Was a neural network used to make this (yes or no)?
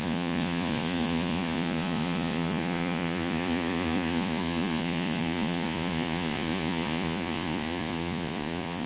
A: yes